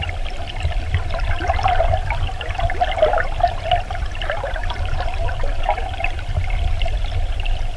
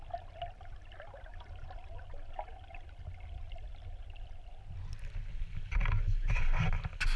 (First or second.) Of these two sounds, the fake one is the first